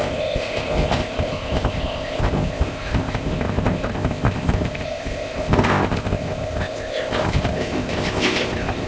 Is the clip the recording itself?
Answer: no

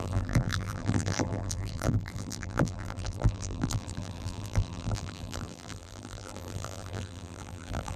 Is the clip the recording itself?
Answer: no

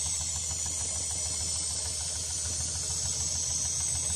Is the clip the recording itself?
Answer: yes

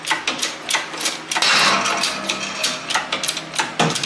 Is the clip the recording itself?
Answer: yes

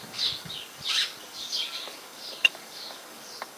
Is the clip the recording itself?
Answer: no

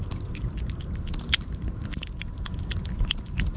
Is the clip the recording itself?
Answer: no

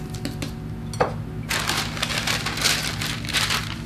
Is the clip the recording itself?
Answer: yes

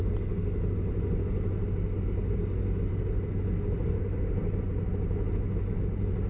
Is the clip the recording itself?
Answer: yes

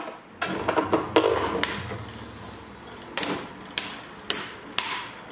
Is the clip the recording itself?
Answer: yes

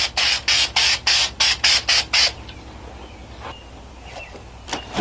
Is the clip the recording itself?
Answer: no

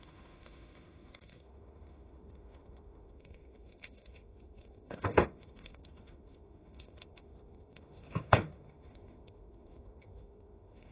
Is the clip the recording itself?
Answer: no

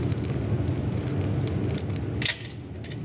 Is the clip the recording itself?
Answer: yes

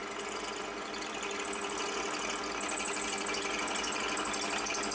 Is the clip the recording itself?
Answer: yes